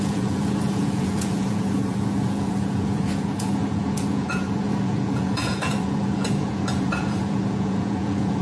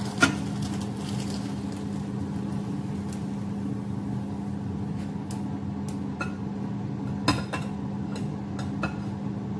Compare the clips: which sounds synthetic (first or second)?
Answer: first